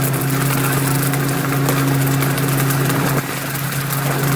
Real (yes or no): yes